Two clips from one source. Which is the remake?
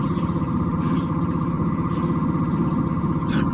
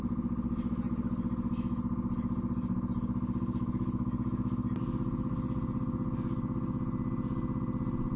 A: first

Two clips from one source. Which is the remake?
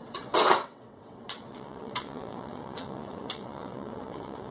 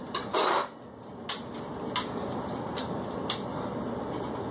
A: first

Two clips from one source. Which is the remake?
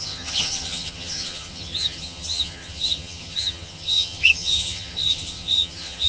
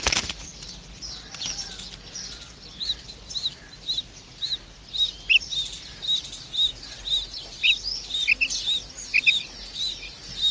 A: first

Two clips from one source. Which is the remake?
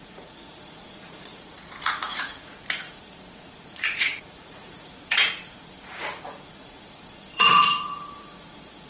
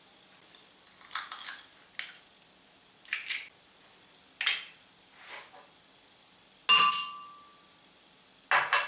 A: first